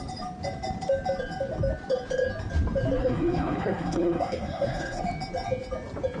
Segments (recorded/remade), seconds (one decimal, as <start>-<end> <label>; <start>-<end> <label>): 0.0-3.0 recorded; 3.0-5.0 remade; 5.0-6.2 recorded